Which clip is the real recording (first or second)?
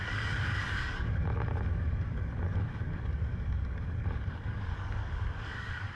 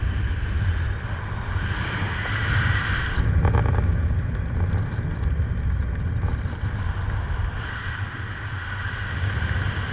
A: second